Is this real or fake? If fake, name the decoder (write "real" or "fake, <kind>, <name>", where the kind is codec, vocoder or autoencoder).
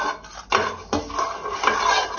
real